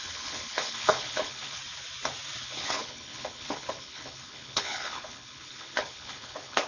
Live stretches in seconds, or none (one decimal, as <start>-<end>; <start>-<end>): 1.6-2.4